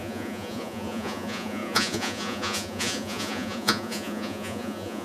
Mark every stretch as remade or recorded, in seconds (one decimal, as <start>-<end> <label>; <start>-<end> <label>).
0.0-5.0 remade